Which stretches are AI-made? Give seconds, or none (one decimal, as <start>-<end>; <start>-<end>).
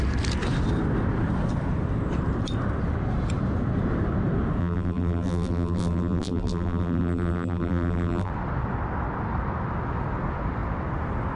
4.6-8.3